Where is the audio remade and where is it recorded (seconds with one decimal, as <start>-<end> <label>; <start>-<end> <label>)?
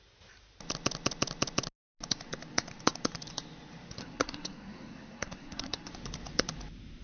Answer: 0.0-4.0 recorded; 4.0-5.9 remade; 5.9-7.0 recorded